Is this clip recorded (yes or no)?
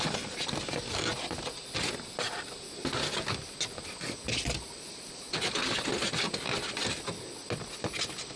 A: yes